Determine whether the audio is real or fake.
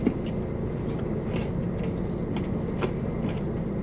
real